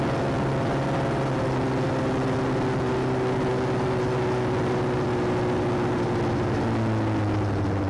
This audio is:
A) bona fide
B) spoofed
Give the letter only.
A